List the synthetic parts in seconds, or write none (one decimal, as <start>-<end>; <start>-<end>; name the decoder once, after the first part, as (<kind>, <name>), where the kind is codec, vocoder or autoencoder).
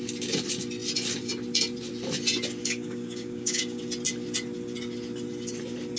2.6-3.8 (codec, DAC)